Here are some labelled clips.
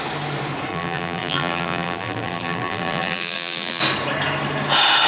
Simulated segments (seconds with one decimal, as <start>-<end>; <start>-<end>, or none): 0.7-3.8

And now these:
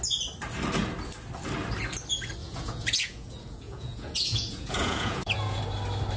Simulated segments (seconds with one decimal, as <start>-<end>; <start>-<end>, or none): 2.4-5.6

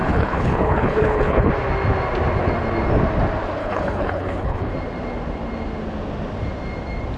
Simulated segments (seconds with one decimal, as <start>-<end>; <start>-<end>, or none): 0.0-1.5; 3.6-4.7

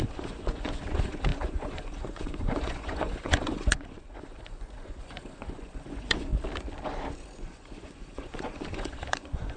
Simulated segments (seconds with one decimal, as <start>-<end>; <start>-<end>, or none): 0.0-6.3; 7.1-9.6